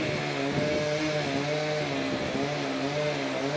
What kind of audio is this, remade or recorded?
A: recorded